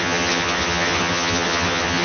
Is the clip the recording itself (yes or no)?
no